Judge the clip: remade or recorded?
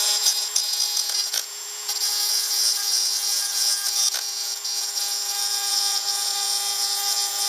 remade